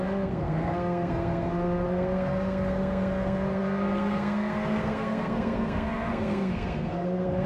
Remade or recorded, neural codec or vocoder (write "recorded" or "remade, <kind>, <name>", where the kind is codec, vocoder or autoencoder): remade, codec, SNAC